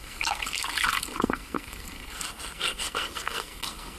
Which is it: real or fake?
fake